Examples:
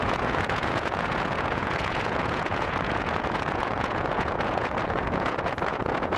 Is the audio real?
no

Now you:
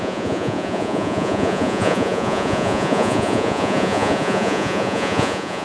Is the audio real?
no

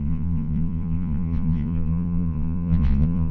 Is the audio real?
no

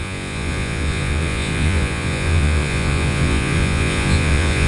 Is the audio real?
no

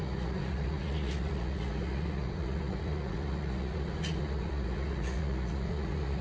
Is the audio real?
no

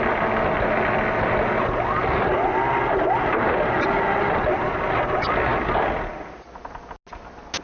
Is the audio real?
yes